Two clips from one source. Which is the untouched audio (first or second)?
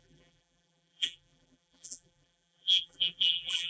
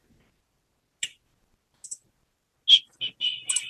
second